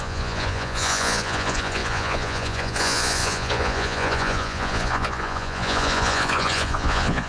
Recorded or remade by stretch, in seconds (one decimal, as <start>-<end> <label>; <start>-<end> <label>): 0.0-7.3 remade